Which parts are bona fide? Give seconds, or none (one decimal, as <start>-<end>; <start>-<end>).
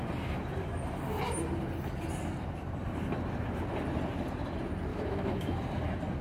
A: 0.0-4.9; 5.6-6.2